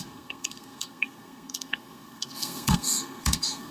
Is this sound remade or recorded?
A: remade